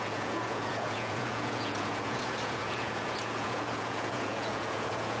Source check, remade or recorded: remade